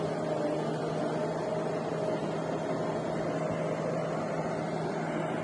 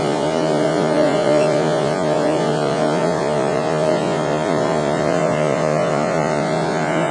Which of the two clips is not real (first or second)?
second